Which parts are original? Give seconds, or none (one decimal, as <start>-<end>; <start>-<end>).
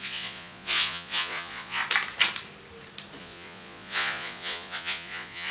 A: 1.8-3.2